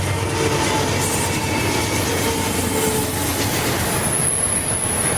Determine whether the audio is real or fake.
real